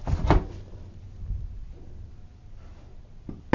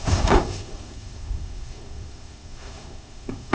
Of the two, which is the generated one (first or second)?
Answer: second